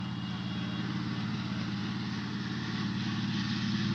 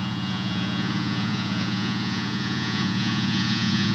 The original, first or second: first